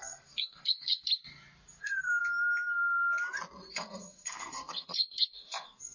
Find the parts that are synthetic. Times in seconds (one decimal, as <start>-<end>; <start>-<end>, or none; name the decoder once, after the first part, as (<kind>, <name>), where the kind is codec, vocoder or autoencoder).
0.0-1.1 (codec, SNAC); 1.8-2.2; 3.7-5.9